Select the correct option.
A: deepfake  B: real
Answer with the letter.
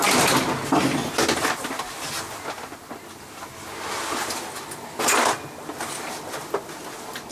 B